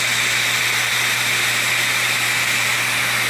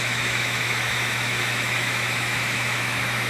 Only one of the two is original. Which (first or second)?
first